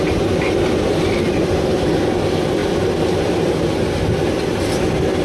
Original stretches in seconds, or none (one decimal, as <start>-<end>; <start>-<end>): 0.0-5.2